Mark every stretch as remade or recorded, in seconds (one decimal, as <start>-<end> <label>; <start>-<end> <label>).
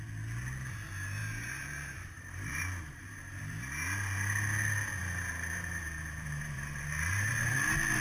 0.0-1.2 recorded; 1.2-3.6 remade; 3.6-5.0 recorded; 5.0-7.5 remade; 7.5-8.0 recorded